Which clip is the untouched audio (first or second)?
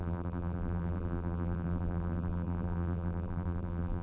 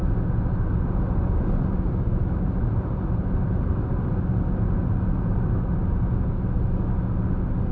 second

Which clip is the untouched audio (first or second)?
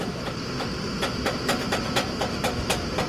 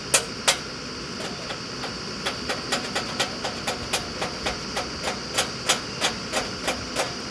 second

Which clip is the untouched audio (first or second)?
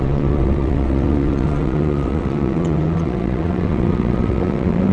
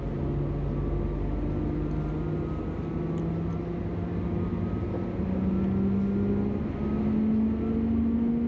second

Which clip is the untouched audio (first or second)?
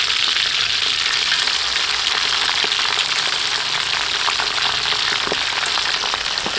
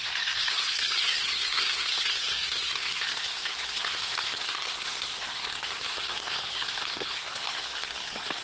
first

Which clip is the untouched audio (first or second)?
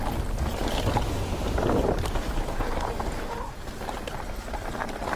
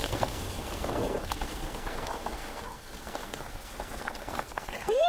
first